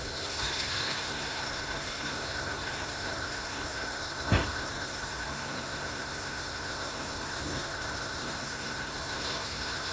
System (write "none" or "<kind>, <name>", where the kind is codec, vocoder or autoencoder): codec, SNAC